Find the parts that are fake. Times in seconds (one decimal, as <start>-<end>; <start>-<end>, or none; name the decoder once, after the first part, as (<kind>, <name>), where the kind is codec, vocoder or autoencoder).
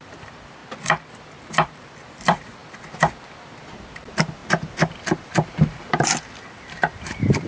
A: 0.0-0.6 (vocoder, BigVGAN v2); 1.5-2.6; 4.0-7.5